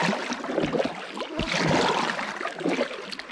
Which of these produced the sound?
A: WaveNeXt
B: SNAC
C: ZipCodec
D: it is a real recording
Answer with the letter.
D